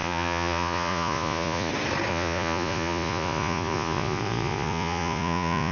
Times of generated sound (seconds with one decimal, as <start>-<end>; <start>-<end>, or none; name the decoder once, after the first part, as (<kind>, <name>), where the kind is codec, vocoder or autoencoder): 0.0-1.7 (vocoder, Vocos); 2.1-5.7